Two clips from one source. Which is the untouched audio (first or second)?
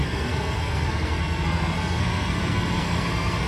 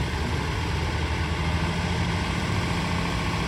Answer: second